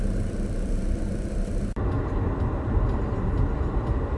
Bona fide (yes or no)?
yes